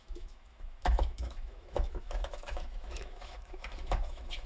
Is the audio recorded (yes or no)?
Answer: no